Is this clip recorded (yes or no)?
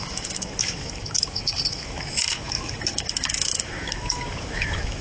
no